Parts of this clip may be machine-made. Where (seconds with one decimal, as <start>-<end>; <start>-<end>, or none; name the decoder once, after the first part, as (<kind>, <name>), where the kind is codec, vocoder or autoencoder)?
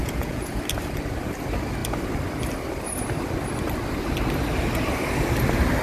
0.0-0.6 (vocoder, Vocos)